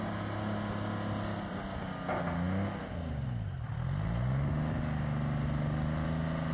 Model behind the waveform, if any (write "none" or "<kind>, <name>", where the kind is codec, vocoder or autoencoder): none